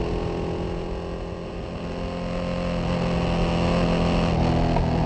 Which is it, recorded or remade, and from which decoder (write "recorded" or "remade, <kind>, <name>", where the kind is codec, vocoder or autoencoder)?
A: recorded